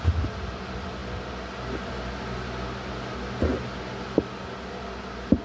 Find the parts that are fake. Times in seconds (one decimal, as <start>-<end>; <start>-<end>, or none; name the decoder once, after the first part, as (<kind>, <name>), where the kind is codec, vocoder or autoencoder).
none